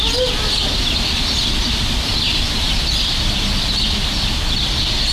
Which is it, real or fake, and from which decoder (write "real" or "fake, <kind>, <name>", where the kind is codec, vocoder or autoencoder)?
real